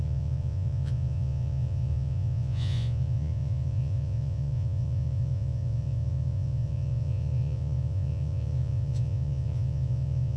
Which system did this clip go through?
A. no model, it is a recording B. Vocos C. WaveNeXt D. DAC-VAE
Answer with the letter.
B